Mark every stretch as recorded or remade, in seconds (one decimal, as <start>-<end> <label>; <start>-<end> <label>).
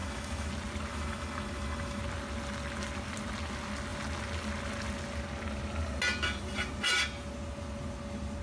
0.0-0.5 remade; 0.5-0.9 recorded; 0.9-2.0 remade; 2.0-8.4 recorded